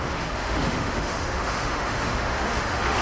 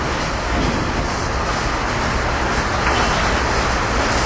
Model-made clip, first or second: first